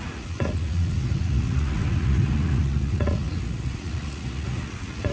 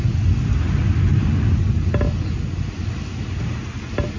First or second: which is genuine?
second